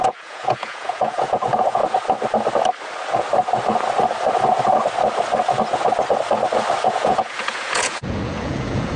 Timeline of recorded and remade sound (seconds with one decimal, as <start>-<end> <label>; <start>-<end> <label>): 0.0-1.8 remade; 1.8-6.9 recorded; 6.9-9.0 remade

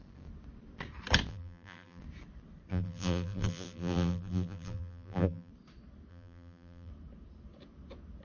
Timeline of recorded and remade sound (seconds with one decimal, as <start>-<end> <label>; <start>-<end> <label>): 0.0-1.3 recorded; 1.3-2.0 remade; 2.0-2.7 recorded; 2.7-5.5 remade; 5.5-6.1 recorded; 6.1-6.9 remade; 6.9-8.2 recorded